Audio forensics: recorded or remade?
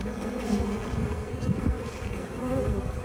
remade